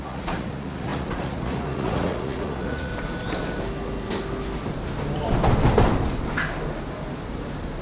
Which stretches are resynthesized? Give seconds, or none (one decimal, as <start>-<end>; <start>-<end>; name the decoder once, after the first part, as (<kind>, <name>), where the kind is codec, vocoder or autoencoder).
0.0-2.9 (vocoder, Vocos)